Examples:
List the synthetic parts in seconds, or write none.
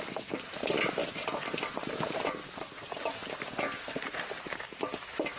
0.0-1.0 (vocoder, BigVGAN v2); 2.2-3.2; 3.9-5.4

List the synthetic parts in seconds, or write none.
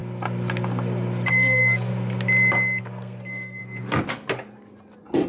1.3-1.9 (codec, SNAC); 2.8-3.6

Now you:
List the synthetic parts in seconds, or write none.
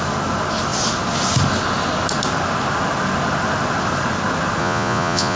4.6-5.4 (vocoder, Vocos)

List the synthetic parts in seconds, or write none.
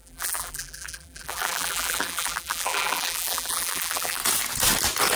0.0-4.2 (vocoder, BigVGAN v2)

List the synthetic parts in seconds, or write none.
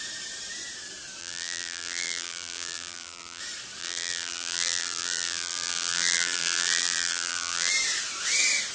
1.2-3.4 (vocoder, BigVGAN v2); 3.8-7.7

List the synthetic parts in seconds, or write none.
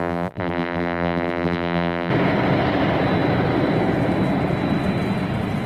0.0-2.1 (vocoder, BigVGAN v2)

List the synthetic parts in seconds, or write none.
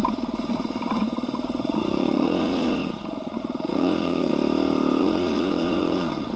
0.0-4.3 (vocoder, Vocos); 5.0-6.4